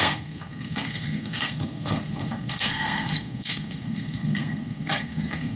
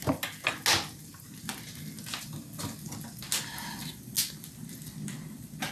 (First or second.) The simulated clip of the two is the first